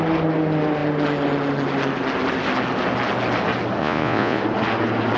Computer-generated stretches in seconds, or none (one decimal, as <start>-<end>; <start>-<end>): 3.8-4.4

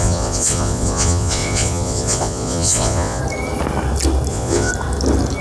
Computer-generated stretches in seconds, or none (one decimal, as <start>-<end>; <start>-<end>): 0.0-3.2; 4.3-4.7